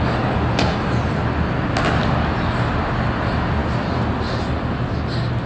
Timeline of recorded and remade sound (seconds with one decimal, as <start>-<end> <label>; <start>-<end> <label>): 0.0-5.5 recorded